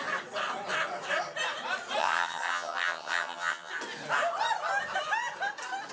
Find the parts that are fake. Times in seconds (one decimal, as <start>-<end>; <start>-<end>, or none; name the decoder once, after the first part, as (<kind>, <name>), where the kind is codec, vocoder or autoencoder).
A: 2.0-3.7 (vocoder, HiFi-GAN)